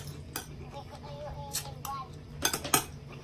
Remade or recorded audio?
recorded